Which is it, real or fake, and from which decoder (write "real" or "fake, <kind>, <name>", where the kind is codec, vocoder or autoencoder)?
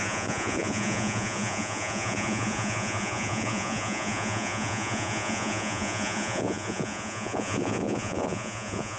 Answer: fake, vocoder, Vocos